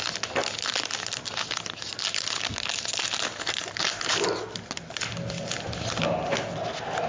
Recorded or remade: recorded